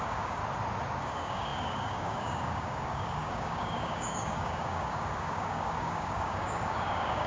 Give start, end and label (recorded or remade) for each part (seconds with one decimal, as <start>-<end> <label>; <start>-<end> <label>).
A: 0.0-0.4 remade; 0.4-1.0 recorded; 1.0-7.3 remade